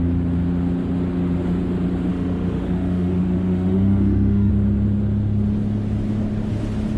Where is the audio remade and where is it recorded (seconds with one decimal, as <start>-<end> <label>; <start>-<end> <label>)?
0.0-2.1 recorded; 2.1-4.5 remade; 4.5-7.0 recorded